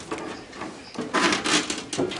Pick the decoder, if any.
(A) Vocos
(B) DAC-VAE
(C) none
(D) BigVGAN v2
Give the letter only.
C